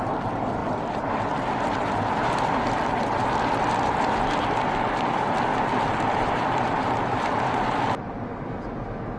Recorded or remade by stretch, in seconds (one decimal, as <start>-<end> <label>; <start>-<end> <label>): 0.0-0.6 recorded; 0.6-3.4 remade; 3.4-5.5 recorded; 5.5-6.7 remade; 6.7-9.2 recorded